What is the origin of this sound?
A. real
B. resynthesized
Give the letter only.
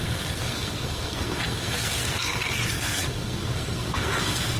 B